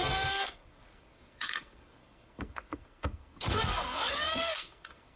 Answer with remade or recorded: remade